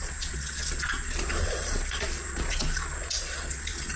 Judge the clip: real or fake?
fake